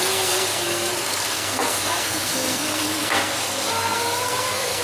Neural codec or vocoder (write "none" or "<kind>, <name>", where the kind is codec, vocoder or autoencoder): codec, SNAC